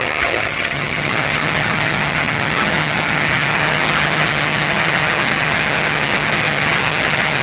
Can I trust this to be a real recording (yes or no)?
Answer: no